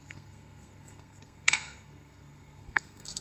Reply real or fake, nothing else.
fake